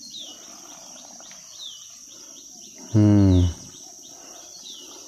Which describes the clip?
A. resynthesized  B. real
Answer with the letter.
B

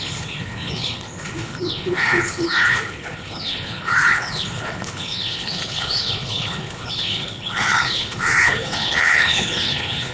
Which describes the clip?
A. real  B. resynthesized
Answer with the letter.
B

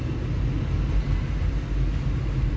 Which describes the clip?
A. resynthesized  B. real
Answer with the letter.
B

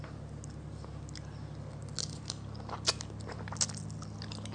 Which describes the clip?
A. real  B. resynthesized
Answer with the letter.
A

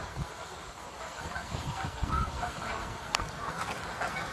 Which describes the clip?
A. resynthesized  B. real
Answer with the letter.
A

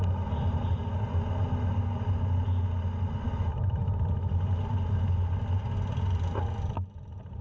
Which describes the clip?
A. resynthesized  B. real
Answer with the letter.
B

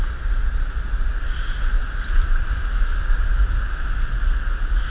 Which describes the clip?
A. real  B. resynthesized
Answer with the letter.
A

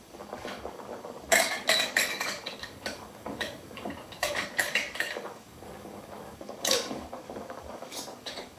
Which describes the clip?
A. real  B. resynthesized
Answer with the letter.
B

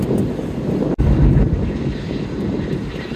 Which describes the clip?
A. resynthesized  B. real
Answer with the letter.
B